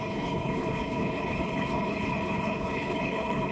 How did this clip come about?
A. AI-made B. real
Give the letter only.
A